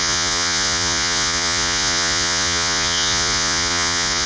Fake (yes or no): yes